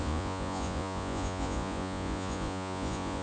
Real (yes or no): no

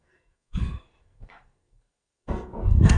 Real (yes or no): no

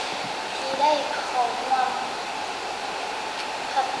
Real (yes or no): yes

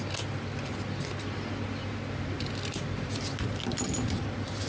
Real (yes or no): yes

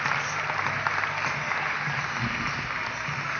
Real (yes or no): yes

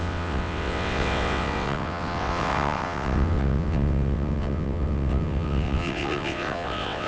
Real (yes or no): no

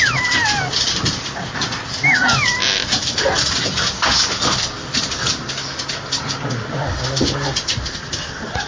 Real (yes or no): yes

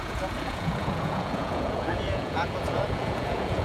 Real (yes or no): no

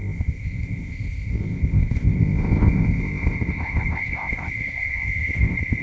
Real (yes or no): no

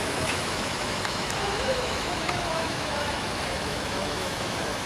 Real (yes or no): no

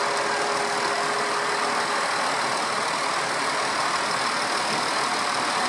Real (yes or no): yes